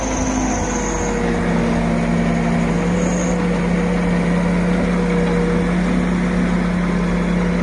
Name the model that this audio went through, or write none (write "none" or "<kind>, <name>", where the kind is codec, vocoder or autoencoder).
none